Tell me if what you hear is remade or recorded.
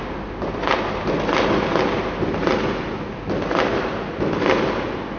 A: recorded